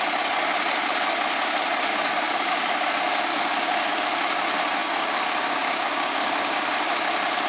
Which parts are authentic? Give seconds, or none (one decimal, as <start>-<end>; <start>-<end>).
0.0-1.9; 2.9-3.3; 4.0-4.8; 6.9-7.5